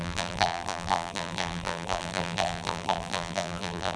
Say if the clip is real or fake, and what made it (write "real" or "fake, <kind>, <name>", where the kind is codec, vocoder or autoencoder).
fake, vocoder, BigVGAN v2